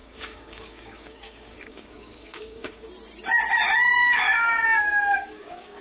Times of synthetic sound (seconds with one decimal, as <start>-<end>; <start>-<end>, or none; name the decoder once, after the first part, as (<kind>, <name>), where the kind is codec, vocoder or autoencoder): 0.0-2.9 (codec, DAC); 4.0-5.8